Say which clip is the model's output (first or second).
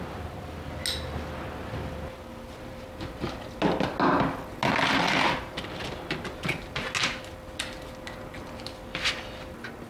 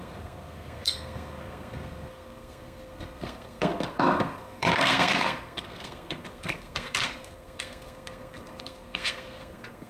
second